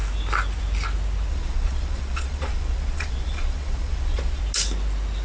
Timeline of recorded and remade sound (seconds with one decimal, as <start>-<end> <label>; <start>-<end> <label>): 0.0-1.3 recorded; 1.3-4.4 remade; 4.4-5.2 recorded